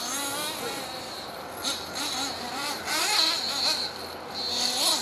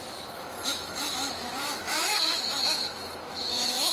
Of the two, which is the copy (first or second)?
second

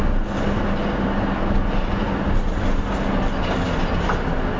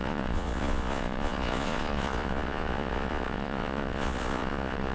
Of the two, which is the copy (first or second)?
second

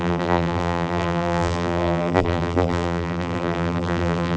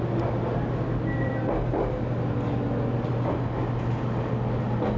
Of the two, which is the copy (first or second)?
first